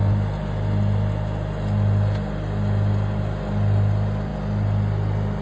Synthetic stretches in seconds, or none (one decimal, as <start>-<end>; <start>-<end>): none